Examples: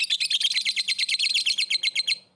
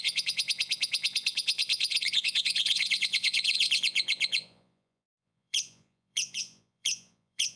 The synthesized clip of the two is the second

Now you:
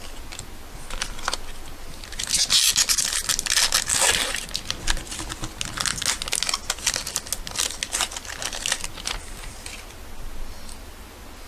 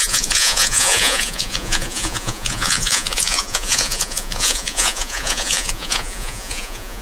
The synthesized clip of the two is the second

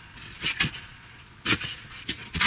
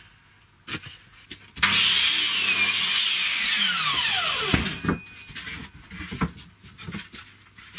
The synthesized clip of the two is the first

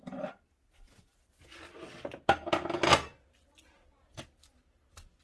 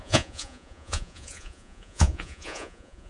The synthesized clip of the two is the second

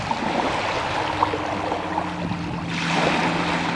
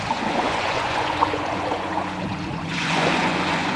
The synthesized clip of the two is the second